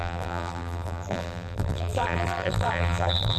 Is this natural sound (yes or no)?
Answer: no